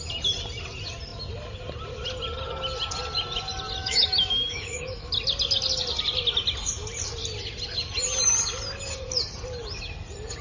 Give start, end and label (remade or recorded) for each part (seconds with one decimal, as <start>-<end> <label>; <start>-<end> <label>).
0.0-3.8 recorded; 3.8-5.1 remade; 5.1-10.4 recorded

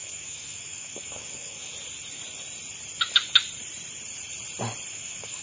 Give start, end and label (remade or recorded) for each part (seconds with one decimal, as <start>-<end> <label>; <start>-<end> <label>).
0.0-1.7 remade; 1.7-4.9 recorded; 4.9-5.4 remade

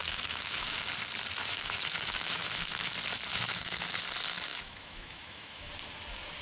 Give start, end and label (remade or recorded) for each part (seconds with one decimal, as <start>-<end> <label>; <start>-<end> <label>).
0.0-0.9 remade; 0.9-1.4 recorded; 1.4-2.9 remade; 2.9-3.3 recorded; 3.3-4.0 remade; 4.0-4.5 recorded; 4.5-5.7 remade; 5.7-6.4 recorded

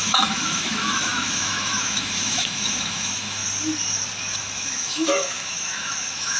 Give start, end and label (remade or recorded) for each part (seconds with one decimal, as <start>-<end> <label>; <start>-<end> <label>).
0.0-3.4 remade; 3.4-4.4 recorded; 4.4-6.4 remade

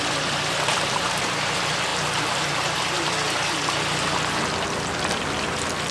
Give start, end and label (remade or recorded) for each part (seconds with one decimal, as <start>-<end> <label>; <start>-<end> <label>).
0.0-5.9 recorded

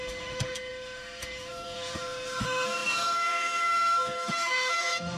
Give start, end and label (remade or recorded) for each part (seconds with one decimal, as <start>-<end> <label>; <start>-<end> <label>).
0.0-5.2 remade

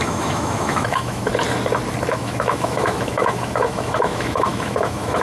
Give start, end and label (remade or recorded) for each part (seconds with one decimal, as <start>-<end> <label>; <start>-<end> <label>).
0.0-1.3 remade; 1.3-2.1 recorded; 2.1-5.2 remade

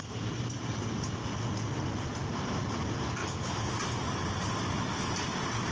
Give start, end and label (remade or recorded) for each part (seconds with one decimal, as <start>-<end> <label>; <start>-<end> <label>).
0.0-3.2 recorded; 3.2-3.7 remade; 3.7-5.7 recorded